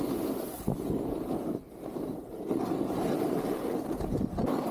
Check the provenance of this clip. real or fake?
real